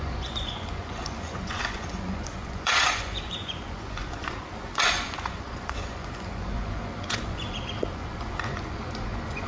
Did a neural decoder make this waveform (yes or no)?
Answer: yes